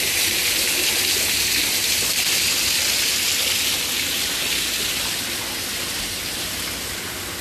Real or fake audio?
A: real